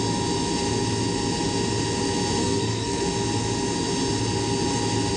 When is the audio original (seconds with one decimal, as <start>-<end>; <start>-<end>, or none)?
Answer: 0.0-2.4; 3.0-5.2